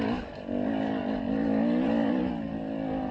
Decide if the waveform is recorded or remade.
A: recorded